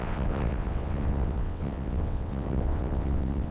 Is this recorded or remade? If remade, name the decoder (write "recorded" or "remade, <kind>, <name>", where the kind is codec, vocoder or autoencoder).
remade, vocoder, WaveNeXt